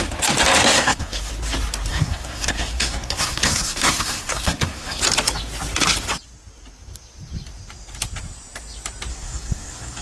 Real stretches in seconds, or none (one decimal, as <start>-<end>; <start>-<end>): 0.0-0.6; 1.3-1.9; 5.0-9.1